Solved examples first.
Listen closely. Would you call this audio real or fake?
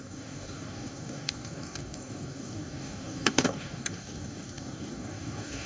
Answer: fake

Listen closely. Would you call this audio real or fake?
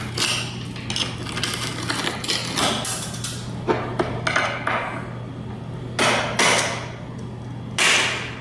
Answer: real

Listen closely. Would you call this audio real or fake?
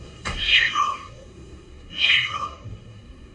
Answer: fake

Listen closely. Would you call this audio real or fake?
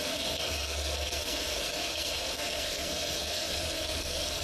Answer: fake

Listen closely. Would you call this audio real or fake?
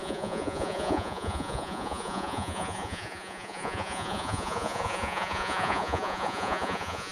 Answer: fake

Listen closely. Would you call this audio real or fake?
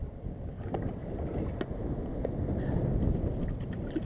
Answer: real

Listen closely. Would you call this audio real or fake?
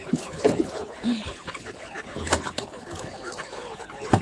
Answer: fake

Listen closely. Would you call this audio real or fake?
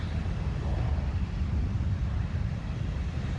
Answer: real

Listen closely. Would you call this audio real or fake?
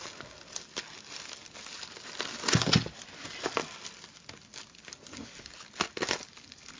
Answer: real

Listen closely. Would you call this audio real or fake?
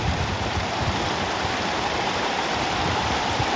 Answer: fake